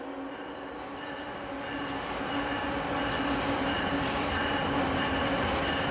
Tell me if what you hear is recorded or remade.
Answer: recorded